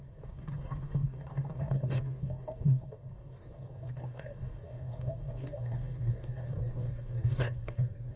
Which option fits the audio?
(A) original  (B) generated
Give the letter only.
B